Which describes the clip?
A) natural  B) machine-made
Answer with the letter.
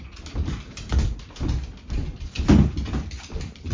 A